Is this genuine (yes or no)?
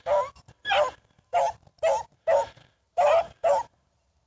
yes